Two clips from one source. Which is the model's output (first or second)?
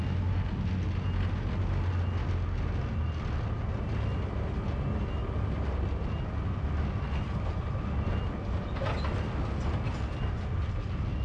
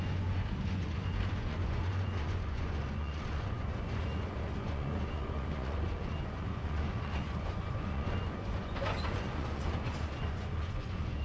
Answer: second